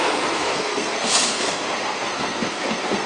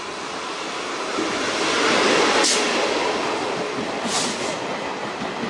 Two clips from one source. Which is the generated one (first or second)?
first